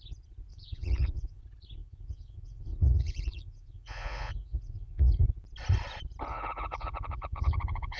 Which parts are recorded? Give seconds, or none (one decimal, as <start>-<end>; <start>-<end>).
0.0-0.5; 1.4-1.8; 5.1-6.3